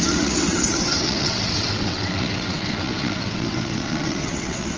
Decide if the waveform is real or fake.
fake